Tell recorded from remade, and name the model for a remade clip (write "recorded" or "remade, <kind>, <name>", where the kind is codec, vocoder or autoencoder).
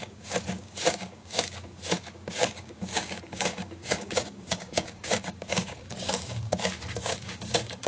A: remade, codec, DAC